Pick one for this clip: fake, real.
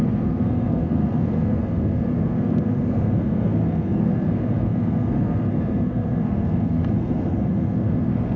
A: fake